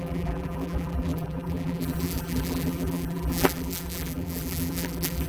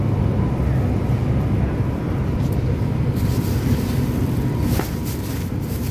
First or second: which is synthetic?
first